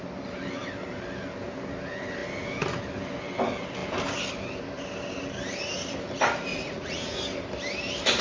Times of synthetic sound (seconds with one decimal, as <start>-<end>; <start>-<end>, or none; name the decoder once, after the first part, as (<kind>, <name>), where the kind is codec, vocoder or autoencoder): 6.5-7.2 (vocoder, Vocos)